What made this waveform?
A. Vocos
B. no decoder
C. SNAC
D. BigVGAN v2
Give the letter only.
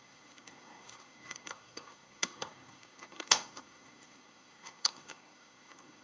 C